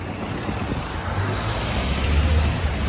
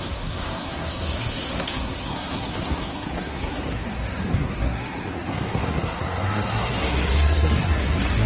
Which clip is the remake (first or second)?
second